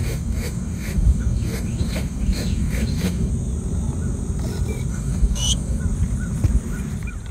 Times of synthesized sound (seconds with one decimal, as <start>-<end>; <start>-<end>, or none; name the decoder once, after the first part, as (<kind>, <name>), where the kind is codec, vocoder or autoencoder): 0.0-3.3 (codec, DAC); 4.9-5.8